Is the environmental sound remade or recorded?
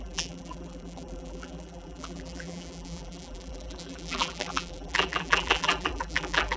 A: remade